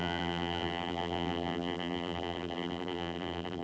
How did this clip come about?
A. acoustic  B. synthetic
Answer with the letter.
B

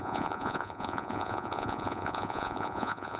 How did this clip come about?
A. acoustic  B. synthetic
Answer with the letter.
B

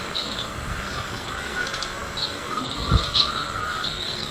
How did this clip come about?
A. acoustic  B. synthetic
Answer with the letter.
B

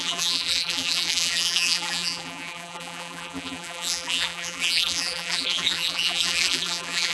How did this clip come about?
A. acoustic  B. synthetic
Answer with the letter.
B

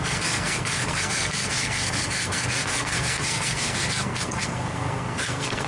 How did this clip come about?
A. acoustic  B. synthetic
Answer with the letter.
B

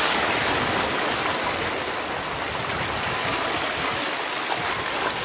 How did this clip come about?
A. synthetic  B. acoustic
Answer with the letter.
B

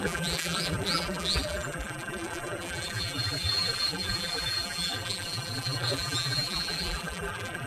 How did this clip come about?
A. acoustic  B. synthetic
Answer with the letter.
B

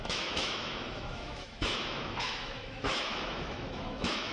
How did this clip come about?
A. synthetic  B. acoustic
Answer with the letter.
A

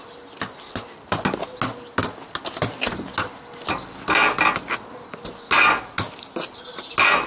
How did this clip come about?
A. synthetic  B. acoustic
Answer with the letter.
B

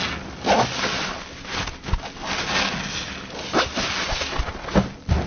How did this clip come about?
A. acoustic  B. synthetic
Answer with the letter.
A